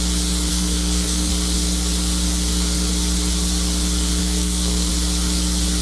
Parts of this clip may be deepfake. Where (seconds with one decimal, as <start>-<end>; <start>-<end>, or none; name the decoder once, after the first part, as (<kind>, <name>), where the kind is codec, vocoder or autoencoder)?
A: 0.5-1.3 (codec, SNAC); 4.2-4.9